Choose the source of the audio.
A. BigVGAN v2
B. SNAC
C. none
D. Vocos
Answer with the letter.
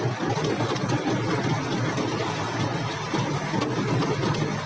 C